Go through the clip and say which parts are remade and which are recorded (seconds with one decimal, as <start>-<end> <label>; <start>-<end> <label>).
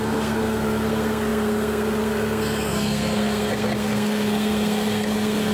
0.0-5.5 remade